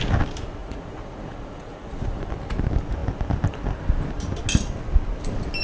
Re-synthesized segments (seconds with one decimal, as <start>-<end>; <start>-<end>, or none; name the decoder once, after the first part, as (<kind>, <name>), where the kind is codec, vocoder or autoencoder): 0.6-2.2 (vocoder, Vocos)